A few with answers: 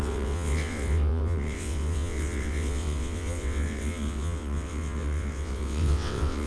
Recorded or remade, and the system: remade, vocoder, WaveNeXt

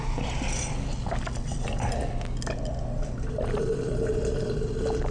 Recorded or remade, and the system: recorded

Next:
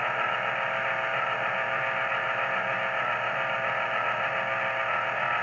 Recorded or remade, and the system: recorded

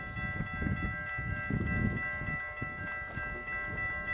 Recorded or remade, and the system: recorded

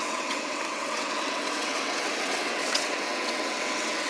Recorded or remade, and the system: remade, vocoder, WaveNeXt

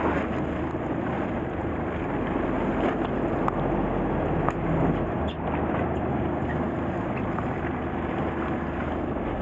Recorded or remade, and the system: recorded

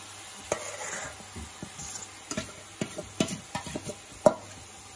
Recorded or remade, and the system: recorded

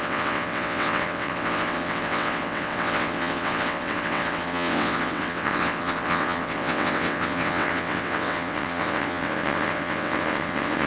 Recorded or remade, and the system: remade, vocoder, WaveNeXt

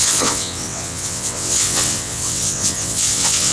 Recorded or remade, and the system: remade, vocoder, WaveNeXt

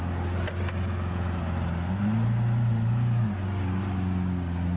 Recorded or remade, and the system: recorded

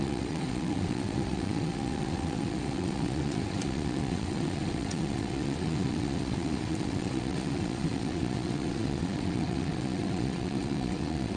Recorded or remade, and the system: remade, vocoder, WaveNeXt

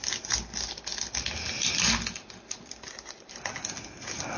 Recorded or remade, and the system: recorded